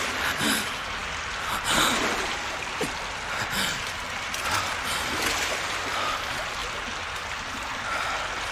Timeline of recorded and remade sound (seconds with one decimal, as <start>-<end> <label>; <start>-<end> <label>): 0.0-8.5 recorded